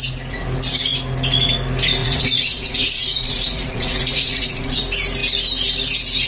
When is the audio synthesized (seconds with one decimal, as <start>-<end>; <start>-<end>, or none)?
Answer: 2.0-4.8